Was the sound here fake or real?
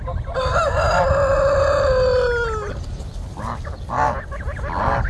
real